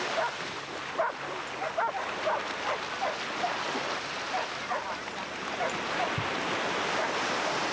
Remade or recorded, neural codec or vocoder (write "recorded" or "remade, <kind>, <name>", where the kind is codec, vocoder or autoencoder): recorded